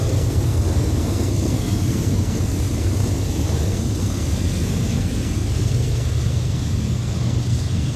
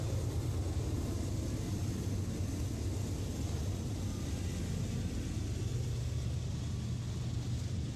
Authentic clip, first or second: second